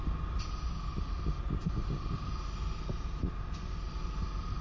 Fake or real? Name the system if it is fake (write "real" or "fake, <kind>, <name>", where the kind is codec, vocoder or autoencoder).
real